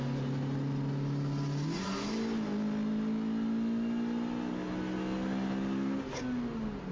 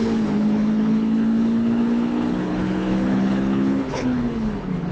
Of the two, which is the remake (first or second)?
second